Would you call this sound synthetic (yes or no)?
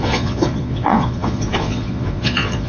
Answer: yes